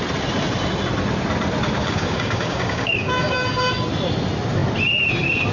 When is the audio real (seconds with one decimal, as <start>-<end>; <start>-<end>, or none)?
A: 0.0-1.8; 3.3-5.5